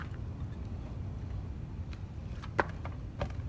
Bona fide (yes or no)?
yes